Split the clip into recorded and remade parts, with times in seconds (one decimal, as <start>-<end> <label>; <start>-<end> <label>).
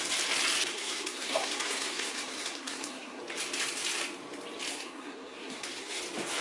0.0-0.7 recorded; 0.7-3.2 remade; 3.2-4.7 recorded; 4.7-6.0 remade; 6.0-6.4 recorded